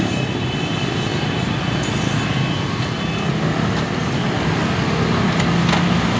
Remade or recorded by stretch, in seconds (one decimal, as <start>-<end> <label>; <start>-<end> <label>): 0.0-6.2 recorded